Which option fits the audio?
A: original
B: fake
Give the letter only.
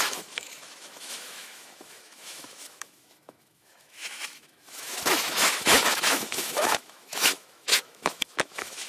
B